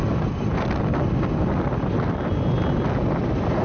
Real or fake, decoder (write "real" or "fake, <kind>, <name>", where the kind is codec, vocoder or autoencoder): real